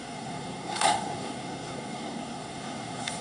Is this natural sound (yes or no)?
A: no